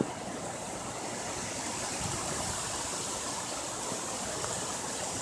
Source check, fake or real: real